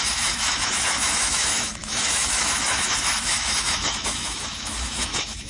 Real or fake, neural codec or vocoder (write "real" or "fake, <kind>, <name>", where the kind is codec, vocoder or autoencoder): fake, autoencoder, DAC-VAE